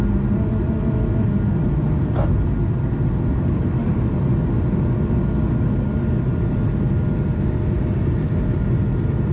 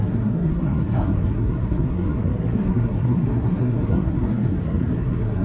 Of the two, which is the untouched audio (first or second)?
first